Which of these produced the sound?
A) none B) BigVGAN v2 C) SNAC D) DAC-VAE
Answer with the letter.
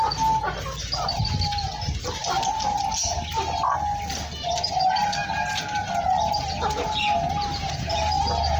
A